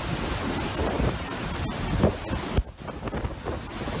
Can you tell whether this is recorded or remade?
recorded